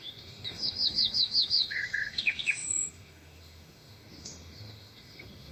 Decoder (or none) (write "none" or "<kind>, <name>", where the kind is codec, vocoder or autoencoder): autoencoder, DAC-VAE